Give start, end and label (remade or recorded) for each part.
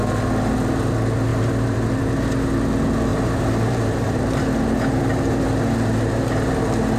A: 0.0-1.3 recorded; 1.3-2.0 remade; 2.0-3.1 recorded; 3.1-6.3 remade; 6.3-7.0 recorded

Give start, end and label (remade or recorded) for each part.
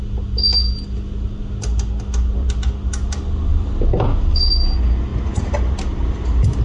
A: 0.0-5.1 recorded; 5.1-6.6 remade